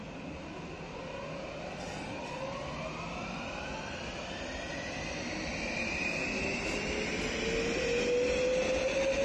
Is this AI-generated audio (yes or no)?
no